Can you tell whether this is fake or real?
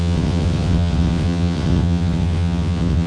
fake